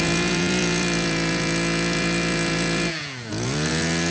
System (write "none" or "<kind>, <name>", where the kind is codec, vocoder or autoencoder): vocoder, Vocos